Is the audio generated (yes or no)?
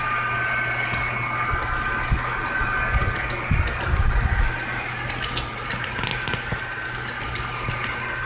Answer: no